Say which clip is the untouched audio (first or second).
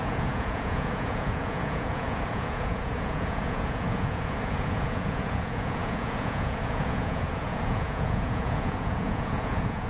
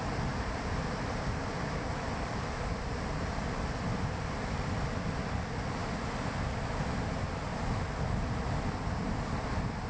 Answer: second